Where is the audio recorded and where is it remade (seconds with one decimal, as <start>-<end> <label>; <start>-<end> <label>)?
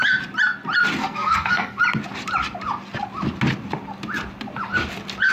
0.0-1.0 recorded; 1.0-1.8 remade; 1.8-5.3 recorded